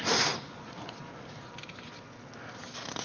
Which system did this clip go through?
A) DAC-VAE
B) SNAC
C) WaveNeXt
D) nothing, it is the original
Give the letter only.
D